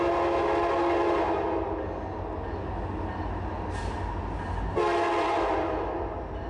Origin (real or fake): real